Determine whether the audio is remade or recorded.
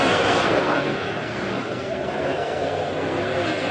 remade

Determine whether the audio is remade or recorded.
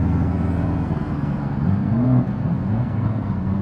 remade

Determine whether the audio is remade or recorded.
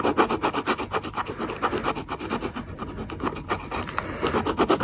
recorded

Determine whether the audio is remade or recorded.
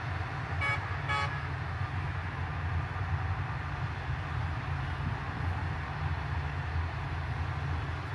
recorded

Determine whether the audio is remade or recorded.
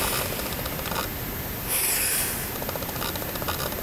recorded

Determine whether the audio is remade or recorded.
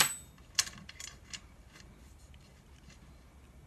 recorded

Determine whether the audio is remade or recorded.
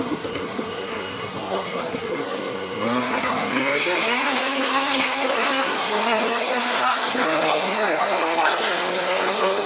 remade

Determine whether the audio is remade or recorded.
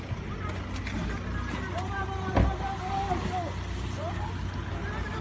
recorded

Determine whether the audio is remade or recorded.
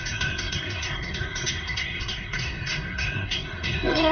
remade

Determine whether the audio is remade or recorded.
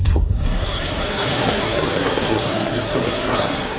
remade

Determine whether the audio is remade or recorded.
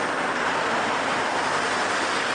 recorded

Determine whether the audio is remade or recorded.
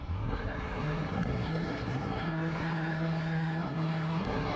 remade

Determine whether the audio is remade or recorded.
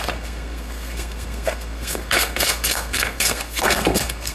remade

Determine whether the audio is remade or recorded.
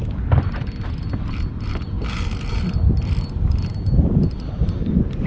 recorded